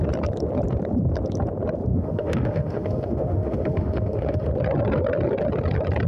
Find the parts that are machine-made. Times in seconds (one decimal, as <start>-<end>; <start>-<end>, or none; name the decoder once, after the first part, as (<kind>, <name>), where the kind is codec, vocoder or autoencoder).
1.9-4.5 (autoencoder, DAC-VAE)

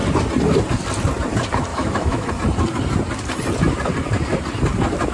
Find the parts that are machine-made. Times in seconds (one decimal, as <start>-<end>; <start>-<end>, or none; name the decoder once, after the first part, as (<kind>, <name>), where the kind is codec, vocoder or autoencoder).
1.7-2.3 (autoencoder, DAC-VAE)